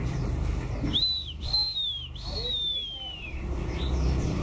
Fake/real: real